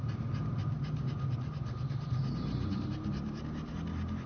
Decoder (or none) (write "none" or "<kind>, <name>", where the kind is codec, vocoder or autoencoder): none